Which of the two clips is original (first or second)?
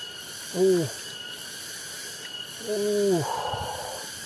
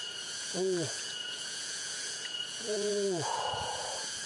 first